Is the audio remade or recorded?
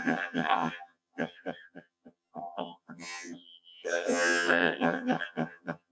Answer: remade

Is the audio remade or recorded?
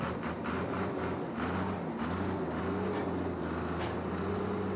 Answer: recorded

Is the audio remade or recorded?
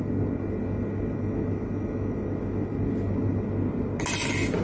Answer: recorded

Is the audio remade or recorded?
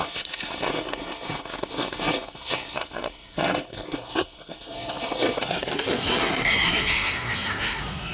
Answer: remade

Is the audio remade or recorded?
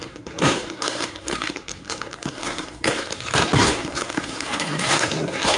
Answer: remade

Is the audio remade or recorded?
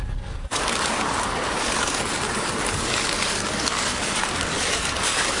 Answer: remade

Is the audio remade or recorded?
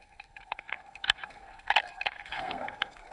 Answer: remade